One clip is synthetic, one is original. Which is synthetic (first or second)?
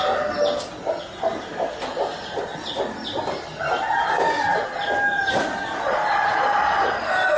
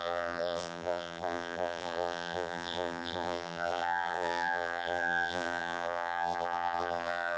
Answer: second